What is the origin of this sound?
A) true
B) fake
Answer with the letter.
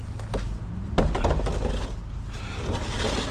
A